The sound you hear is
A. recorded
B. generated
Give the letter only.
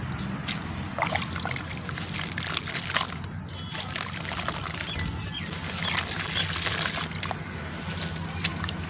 A